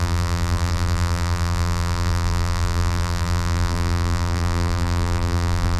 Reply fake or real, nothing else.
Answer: fake